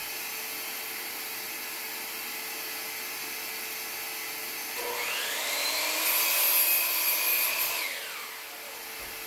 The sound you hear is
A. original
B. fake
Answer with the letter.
A